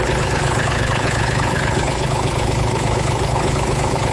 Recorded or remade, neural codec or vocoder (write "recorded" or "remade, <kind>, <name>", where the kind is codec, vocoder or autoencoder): remade, codec, HILCodec